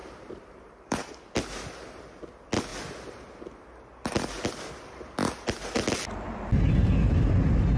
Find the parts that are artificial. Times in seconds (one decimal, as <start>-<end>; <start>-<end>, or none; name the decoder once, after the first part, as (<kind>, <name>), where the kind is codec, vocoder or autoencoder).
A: 0.0-1.1 (vocoder, BigVGAN v2)